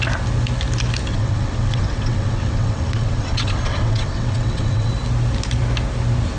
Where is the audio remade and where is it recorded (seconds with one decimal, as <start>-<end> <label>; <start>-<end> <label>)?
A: 0.0-1.1 recorded; 1.1-4.9 remade; 4.9-6.4 recorded